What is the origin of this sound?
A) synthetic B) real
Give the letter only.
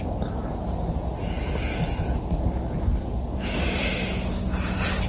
B